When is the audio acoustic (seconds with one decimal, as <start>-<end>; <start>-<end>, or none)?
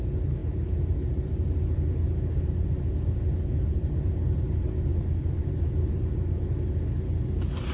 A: 0.0-7.7